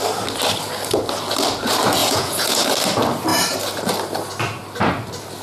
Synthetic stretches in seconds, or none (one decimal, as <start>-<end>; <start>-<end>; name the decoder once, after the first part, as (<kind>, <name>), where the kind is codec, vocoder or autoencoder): 2.0-2.6 (vocoder, Vocos)